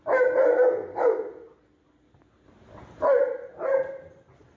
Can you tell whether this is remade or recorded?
recorded